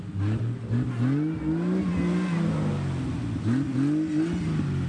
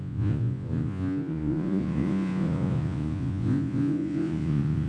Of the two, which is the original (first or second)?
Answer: first